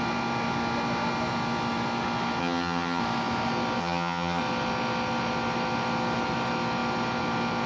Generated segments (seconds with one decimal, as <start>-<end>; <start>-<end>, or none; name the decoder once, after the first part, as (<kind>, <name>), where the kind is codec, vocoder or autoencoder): 2.4-3.0 (vocoder, HiFi-GAN); 3.8-4.4